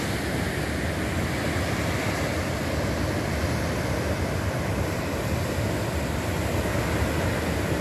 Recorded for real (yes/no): yes